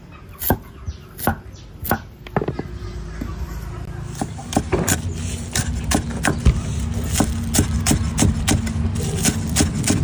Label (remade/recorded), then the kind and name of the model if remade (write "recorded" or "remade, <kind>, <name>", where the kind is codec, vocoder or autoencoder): recorded